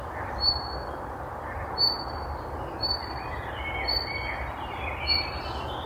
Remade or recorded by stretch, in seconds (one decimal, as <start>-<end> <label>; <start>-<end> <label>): 0.0-5.9 remade